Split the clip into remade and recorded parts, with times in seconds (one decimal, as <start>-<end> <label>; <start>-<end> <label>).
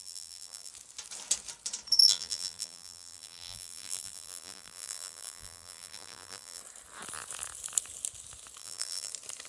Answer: 0.0-0.7 remade; 0.7-2.0 recorded; 2.0-6.6 remade; 6.6-8.6 recorded; 8.6-9.1 remade; 9.1-9.5 recorded